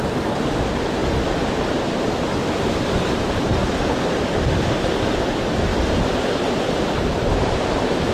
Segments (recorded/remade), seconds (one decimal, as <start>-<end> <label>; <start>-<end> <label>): 0.0-8.1 recorded